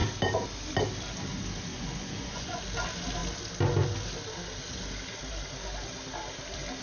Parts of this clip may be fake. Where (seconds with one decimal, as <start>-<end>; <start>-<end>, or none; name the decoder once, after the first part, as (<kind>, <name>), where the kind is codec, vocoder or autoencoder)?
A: 1.7-2.6 (vocoder, Vocos)